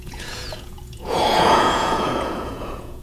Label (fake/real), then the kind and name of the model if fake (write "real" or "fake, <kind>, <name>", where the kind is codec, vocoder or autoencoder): fake, vocoder, Vocos